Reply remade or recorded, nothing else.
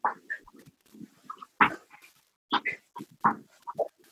recorded